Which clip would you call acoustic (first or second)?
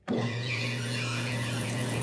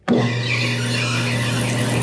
second